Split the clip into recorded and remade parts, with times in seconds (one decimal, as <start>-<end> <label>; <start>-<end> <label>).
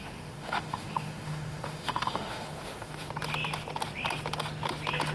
0.0-3.1 remade; 3.1-5.1 recorded